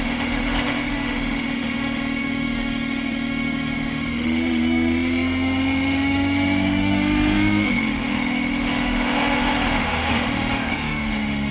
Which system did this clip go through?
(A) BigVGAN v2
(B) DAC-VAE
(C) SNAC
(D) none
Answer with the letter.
B